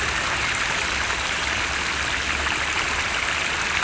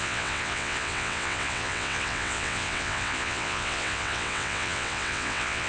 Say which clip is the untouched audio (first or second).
first